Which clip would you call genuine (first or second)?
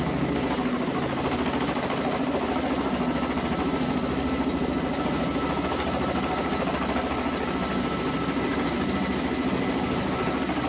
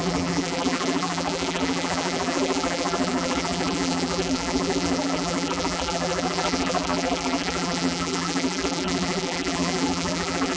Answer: first